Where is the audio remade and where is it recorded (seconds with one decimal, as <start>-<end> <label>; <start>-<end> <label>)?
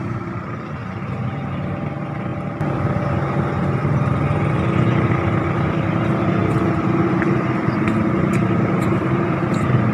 0.0-9.9 remade